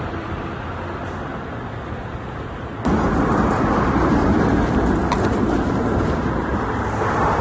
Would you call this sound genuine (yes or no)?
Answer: yes